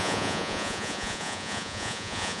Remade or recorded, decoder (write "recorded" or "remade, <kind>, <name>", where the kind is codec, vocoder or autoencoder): remade, vocoder, Vocos